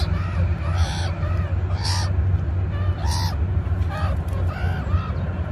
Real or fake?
real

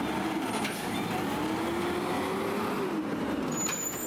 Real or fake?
real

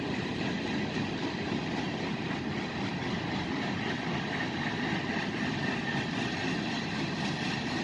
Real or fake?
fake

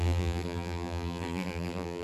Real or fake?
fake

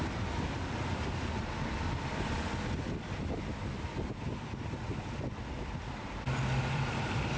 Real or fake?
fake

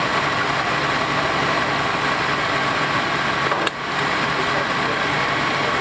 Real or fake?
real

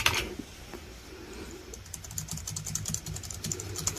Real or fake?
real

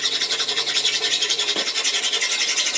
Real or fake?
real